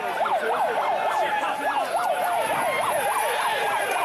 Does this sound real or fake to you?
real